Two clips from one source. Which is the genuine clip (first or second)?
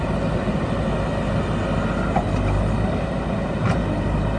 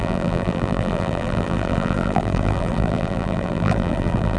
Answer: first